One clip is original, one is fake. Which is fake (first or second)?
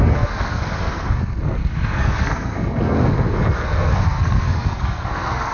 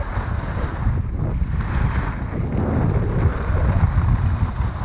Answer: first